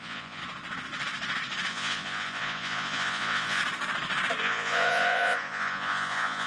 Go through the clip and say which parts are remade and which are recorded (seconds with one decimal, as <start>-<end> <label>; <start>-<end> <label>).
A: 0.0-0.4 remade; 0.4-1.7 recorded; 1.7-3.6 remade; 3.6-4.4 recorded; 4.4-6.5 remade